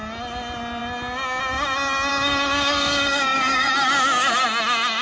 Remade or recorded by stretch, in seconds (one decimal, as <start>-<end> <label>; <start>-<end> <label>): 0.0-2.1 recorded; 2.1-3.7 remade; 3.7-5.0 recorded